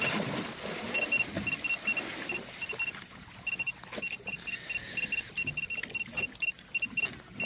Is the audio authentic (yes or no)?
yes